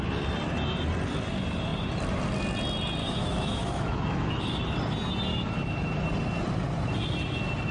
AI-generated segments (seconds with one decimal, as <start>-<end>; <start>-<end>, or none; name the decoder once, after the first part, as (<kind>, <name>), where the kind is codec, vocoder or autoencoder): 3.0-4.6 (autoencoder, DAC-VAE); 5.3-6.0